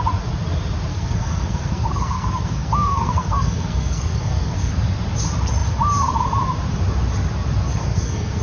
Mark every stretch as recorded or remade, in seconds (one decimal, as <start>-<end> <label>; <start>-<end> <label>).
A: 0.0-0.9 recorded; 0.9-4.7 remade; 4.7-7.7 recorded; 7.7-8.4 remade